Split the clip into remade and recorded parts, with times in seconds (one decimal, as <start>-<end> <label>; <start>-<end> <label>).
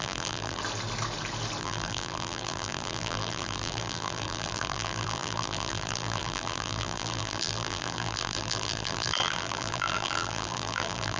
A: 0.0-0.6 remade; 0.6-1.6 recorded; 1.6-11.2 remade